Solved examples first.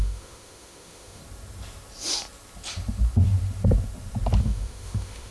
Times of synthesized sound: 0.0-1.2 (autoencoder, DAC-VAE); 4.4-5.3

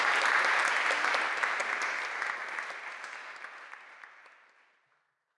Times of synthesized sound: none

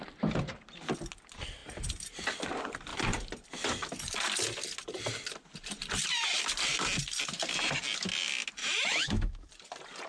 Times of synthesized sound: 8.6-9.5 (autoencoder, DAC-VAE)

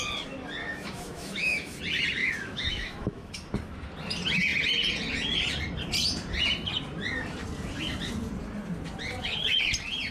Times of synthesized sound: 0.6-1.8 (autoencoder, DAC-VAE); 2.2-3.3

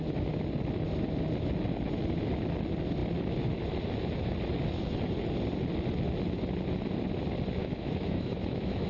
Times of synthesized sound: 7.6-8.9 (autoencoder, DAC-VAE)

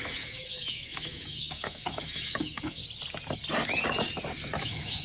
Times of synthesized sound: 0.0-2.8 (autoencoder, DAC-VAE); 4.6-5.0

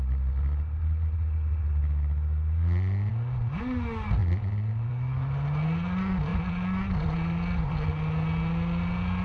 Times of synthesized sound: none